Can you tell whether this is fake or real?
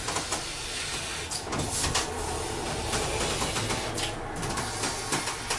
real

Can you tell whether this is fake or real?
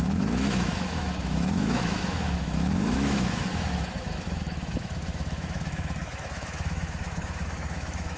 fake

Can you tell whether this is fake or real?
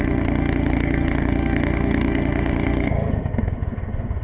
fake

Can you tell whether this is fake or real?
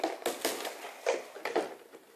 real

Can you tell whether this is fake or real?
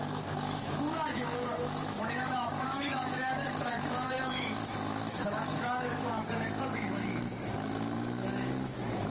fake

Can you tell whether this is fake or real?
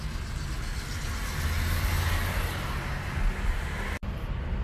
real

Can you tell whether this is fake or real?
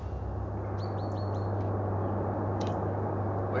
real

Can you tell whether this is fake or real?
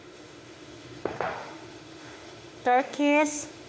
fake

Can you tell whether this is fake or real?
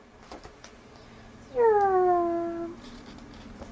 real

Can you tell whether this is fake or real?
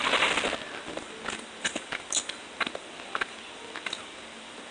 real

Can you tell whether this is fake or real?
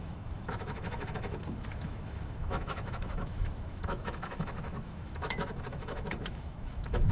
fake